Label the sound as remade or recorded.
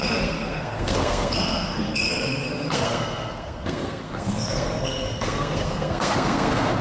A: remade